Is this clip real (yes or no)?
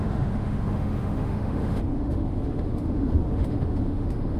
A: no